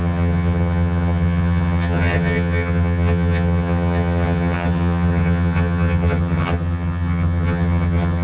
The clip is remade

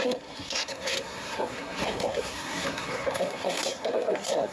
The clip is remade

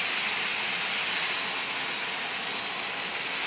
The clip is recorded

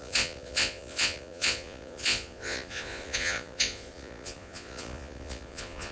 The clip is remade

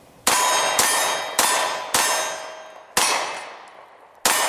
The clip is recorded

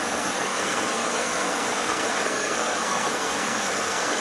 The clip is remade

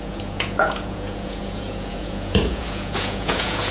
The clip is remade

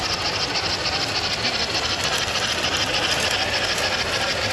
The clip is recorded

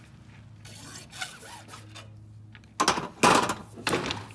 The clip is recorded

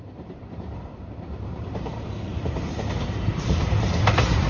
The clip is remade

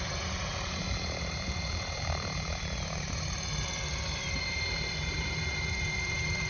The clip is remade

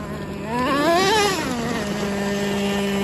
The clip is recorded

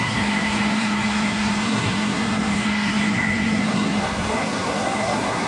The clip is remade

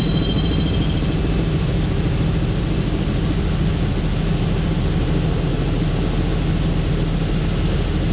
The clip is recorded